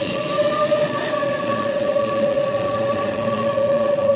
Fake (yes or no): yes